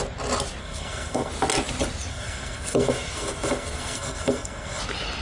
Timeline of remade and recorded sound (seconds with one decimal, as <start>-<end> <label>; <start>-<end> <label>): 0.0-0.6 recorded; 0.6-1.3 remade; 1.3-2.1 recorded; 2.1-4.8 remade; 4.8-5.2 recorded